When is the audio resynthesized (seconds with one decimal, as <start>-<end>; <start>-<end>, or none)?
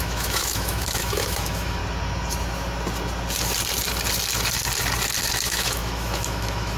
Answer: 0.0-1.8; 5.2-6.8